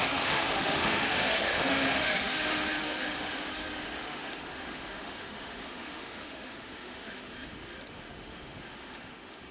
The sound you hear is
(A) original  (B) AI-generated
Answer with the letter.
B